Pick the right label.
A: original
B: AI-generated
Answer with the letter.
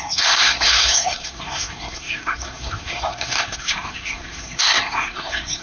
B